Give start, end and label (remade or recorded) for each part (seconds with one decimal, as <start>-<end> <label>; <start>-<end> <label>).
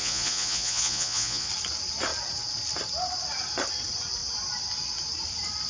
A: 0.0-1.5 remade; 1.5-5.7 recorded